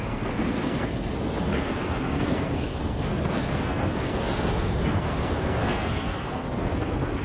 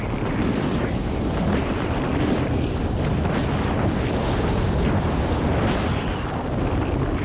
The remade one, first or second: first